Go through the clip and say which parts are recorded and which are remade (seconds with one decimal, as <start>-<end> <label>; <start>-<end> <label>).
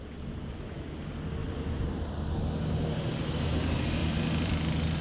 0.0-1.4 recorded; 1.4-1.9 remade; 1.9-4.0 recorded; 4.0-4.5 remade; 4.5-5.0 recorded